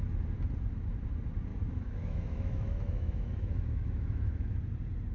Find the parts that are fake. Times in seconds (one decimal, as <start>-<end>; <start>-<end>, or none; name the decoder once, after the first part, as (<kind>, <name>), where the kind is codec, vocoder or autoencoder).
1.5-4.6 (autoencoder, DAC-VAE)